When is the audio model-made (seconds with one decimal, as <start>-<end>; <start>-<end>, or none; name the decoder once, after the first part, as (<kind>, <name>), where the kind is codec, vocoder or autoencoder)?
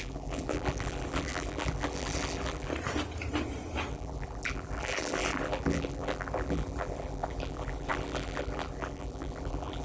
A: 0.0-2.7 (vocoder, BigVGAN v2); 3.9-9.8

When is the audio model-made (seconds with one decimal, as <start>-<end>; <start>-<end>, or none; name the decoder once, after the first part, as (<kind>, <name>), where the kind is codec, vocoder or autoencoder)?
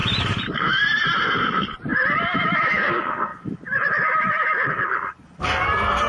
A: 0.0-1.3 (vocoder, BigVGAN v2)